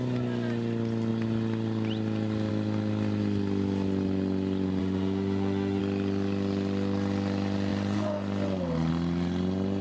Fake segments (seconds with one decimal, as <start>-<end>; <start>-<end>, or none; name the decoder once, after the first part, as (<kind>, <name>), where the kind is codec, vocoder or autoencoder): 4.8-5.8 (autoencoder, DAC-VAE)